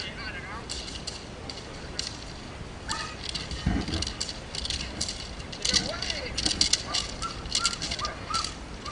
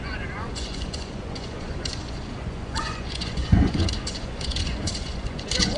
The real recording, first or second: first